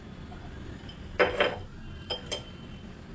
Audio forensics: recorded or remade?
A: recorded